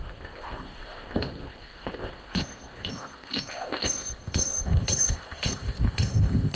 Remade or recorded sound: remade